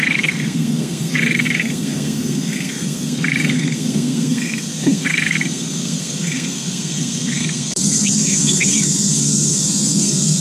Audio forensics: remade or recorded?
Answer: remade